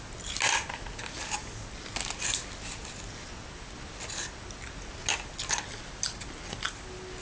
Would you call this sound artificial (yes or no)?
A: no